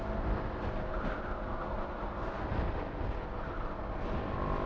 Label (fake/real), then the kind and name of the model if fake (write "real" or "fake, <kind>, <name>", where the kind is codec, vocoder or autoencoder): real